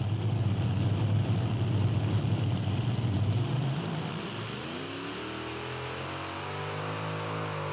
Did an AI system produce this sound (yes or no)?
no